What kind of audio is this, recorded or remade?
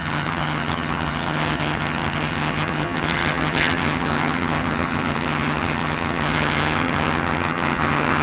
remade